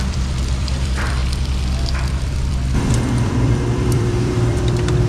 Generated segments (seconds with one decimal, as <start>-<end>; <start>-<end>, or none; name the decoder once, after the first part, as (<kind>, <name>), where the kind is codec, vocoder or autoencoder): 0.0-5.1 (vocoder, BigVGAN v2)